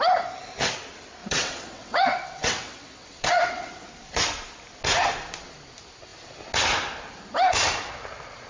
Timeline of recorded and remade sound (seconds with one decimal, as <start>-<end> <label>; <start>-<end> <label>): 0.0-1.2 recorded; 1.2-3.9 remade; 3.9-8.5 recorded